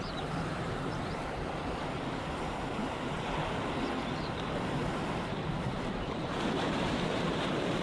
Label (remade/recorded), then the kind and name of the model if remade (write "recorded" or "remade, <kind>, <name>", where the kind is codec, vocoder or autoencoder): remade, vocoder, BigVGAN v2